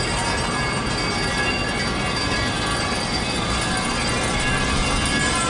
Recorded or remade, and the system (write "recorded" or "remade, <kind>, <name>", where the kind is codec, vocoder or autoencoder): recorded